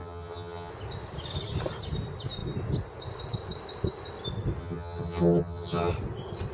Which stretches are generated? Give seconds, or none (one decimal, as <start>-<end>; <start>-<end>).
0.0-0.7; 4.6-5.9